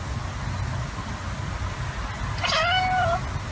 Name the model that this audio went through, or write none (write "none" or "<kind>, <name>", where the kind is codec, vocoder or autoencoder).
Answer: none